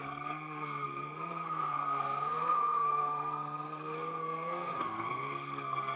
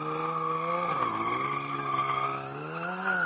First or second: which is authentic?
second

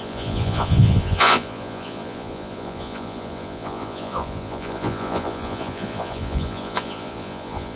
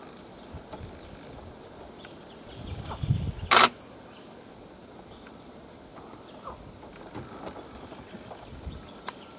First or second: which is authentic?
second